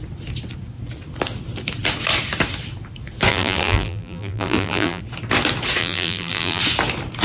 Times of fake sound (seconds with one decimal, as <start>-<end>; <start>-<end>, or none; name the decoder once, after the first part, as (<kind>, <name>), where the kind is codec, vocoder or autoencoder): 3.3-5.0 (vocoder, BigVGAN v2); 5.8-6.6